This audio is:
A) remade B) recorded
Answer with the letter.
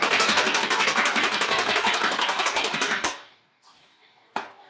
A